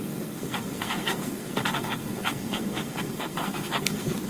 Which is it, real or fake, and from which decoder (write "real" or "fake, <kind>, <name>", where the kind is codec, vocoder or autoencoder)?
fake, codec, SNAC